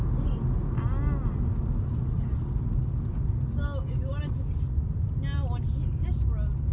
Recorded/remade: recorded